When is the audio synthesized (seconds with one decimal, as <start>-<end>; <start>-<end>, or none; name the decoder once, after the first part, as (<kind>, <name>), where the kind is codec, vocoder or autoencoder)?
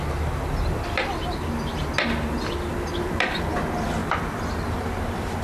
4.0-5.4 (vocoder, BigVGAN v2)